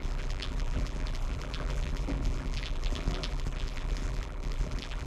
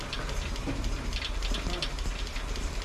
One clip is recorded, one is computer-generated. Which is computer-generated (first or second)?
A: first